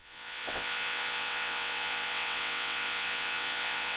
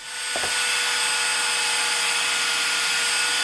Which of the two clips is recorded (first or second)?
second